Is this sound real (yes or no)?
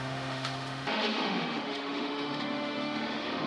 no